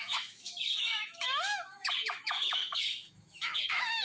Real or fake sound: fake